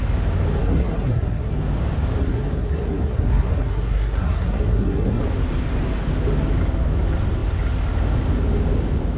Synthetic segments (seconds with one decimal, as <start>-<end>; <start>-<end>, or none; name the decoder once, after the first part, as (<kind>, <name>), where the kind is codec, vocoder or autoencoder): 0.6-1.5 (codec, SNAC); 2.2-5.2